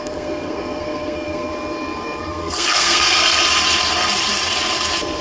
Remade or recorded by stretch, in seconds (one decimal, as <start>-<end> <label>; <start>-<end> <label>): 0.0-1.5 remade; 1.5-2.2 recorded; 2.2-3.4 remade; 3.4-5.2 recorded